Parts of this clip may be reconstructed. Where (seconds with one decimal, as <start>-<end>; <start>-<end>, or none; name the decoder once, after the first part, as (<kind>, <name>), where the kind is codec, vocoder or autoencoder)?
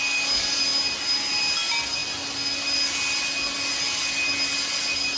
none